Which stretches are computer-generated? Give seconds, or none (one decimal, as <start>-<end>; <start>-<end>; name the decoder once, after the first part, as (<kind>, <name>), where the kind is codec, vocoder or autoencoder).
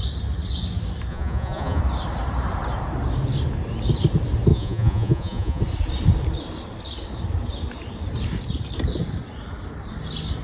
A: 1.1-1.8 (vocoder, Vocos); 4.5-5.6